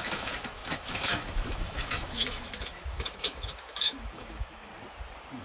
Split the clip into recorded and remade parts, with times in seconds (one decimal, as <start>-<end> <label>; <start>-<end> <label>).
0.0-4.7 remade; 4.7-5.4 recorded